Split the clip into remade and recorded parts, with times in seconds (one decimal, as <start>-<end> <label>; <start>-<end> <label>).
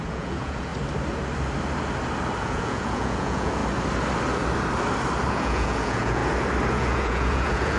0.0-0.7 remade; 0.7-2.4 recorded; 2.4-3.6 remade; 3.6-5.3 recorded; 5.3-6.2 remade; 6.2-6.7 recorded; 6.7-7.8 remade